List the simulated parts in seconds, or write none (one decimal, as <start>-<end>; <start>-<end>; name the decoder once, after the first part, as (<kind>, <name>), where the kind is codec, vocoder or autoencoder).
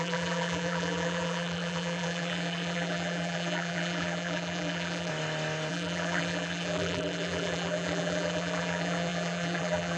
0.0-5.1 (vocoder, BigVGAN v2); 5.7-10.0